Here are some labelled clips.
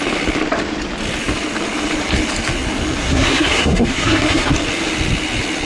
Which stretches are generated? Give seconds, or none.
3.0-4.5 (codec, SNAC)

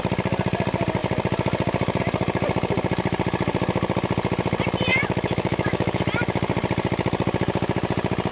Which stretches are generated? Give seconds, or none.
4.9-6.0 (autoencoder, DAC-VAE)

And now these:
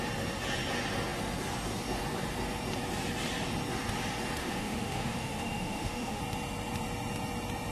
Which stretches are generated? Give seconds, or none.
4.4-6.2 (autoencoder, DAC-VAE)

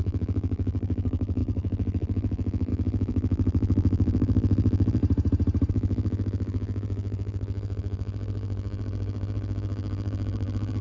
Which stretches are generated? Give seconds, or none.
0.0-5.0 (vocoder, BigVGAN v2); 5.7-10.8

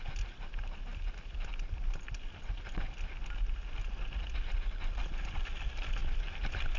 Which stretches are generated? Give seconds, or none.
none

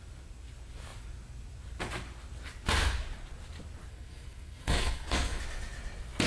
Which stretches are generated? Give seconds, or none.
3.9-5.4 (codec, SNAC)

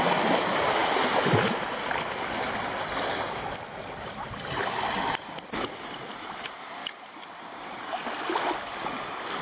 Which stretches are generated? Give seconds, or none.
none

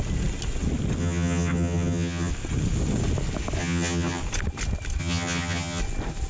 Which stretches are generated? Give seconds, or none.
1.0-2.3 (vocoder, HiFi-GAN); 3.6-4.2; 5.0-5.8